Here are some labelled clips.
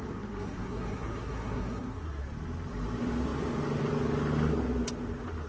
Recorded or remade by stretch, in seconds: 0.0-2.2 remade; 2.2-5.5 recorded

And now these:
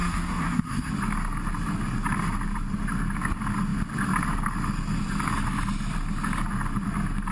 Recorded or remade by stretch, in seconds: 0.0-0.9 remade; 0.9-7.3 recorded

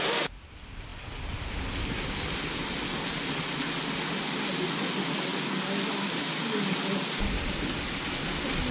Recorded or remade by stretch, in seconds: 0.0-8.7 recorded